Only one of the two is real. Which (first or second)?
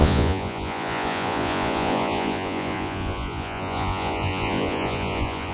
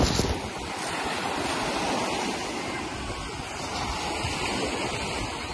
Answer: second